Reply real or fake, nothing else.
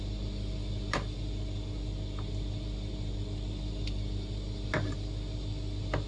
real